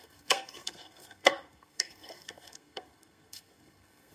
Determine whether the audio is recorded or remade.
remade